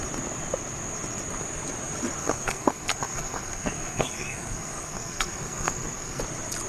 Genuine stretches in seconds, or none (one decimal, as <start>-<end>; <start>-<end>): 0.0-2.2; 6.2-6.7